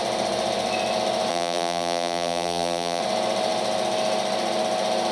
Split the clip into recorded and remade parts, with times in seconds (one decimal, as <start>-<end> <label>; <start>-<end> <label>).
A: 0.0-1.3 recorded; 1.3-3.0 remade; 3.0-5.1 recorded